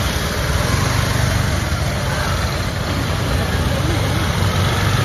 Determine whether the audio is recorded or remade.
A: recorded